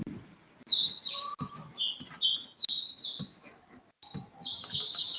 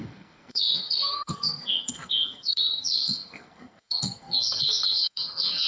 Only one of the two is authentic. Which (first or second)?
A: first